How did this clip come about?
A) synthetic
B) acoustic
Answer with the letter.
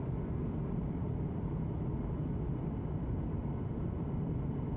B